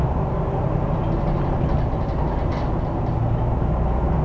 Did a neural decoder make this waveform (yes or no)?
no